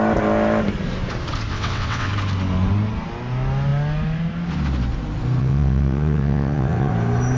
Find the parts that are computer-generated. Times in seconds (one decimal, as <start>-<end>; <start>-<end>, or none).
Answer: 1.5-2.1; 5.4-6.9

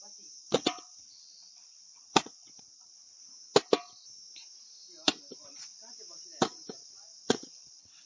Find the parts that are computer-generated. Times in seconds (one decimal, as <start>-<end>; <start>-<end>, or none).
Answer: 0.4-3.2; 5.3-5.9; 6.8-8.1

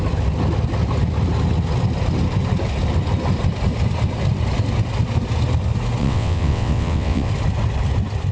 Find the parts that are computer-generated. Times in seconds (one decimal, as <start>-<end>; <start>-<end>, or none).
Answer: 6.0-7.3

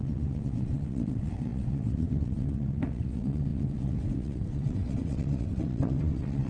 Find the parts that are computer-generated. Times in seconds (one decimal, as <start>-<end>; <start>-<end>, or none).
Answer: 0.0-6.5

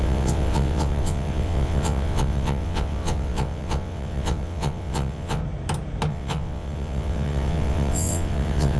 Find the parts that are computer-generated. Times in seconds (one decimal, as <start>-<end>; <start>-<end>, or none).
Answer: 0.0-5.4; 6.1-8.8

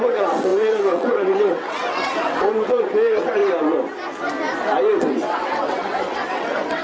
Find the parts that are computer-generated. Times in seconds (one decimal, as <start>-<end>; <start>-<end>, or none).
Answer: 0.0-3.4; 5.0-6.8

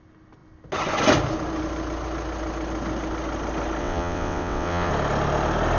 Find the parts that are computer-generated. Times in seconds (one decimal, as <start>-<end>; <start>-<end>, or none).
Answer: 3.8-4.9